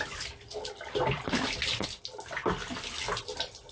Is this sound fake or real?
real